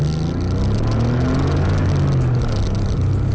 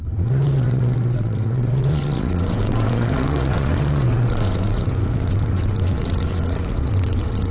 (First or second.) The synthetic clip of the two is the second